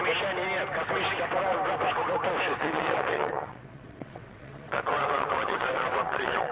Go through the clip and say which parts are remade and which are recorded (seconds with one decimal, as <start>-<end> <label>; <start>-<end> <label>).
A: 0.0-2.6 recorded; 2.6-6.5 remade